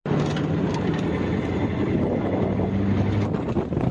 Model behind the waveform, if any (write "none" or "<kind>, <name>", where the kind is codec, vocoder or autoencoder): none